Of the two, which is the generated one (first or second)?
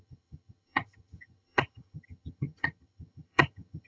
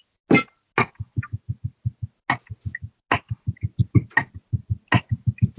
first